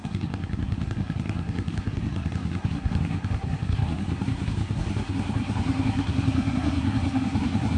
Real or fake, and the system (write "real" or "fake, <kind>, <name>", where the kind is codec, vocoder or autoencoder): fake, codec, SNAC